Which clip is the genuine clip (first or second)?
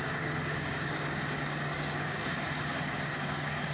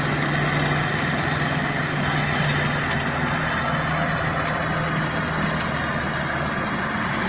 second